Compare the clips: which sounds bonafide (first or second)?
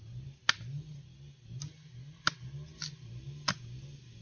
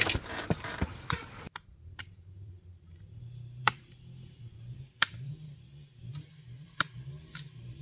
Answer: first